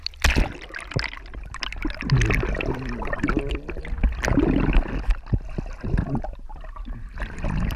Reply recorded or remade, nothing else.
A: recorded